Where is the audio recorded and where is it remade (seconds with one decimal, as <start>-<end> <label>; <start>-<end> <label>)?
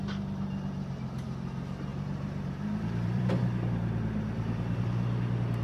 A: 0.0-1.9 recorded; 1.9-3.3 remade; 3.3-5.6 recorded